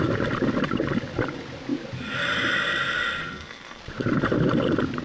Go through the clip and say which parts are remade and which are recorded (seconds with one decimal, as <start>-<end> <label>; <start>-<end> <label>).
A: 0.0-3.2 recorded; 3.2-3.8 remade; 3.8-5.0 recorded